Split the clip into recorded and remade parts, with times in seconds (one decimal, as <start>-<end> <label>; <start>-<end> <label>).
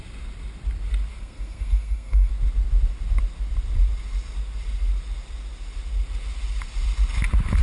0.0-1.1 recorded; 1.1-2.3 remade; 2.3-7.6 recorded